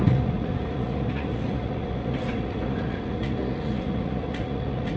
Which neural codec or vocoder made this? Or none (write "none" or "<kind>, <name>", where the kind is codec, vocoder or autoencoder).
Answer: vocoder, Vocos